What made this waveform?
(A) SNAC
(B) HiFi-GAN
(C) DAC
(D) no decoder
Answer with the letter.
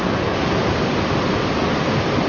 D